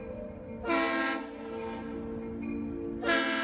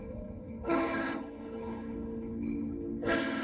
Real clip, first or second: first